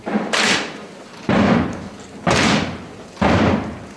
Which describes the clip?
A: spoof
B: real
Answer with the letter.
B